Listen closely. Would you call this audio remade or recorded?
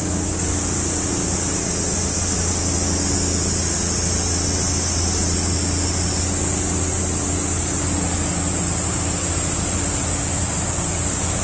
recorded